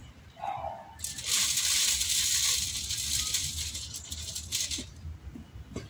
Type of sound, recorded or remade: recorded